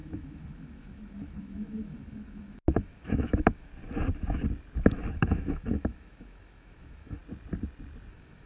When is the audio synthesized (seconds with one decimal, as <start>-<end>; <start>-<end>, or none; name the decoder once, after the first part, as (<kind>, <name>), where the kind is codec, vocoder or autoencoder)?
0.0-3.7 (autoencoder, DAC-VAE); 5.1-7.2; 8.1-8.5